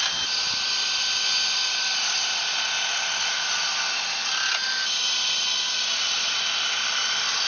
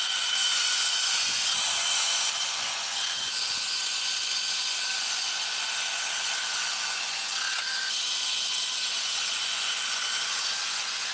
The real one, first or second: first